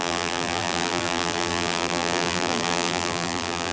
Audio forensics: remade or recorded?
remade